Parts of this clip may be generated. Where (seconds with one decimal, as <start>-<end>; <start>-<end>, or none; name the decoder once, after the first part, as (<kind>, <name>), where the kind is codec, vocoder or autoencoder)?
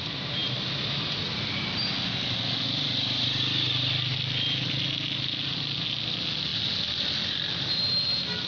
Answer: none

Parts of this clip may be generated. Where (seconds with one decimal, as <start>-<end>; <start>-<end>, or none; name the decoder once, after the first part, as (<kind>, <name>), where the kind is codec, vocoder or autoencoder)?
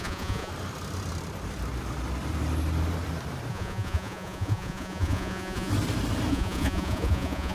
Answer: 0.0-0.5 (vocoder, Vocos); 3.5-5.7; 6.3-7.5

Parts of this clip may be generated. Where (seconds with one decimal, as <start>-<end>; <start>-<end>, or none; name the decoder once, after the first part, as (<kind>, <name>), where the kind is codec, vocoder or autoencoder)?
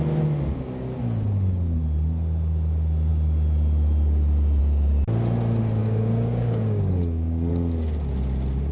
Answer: 5.8-7.5 (codec, DAC)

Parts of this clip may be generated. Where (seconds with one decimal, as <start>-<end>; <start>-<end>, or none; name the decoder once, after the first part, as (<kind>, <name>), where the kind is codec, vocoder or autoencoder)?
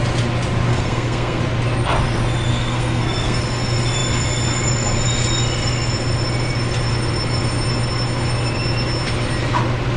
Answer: 0.7-1.4 (codec, SNAC); 2.5-3.4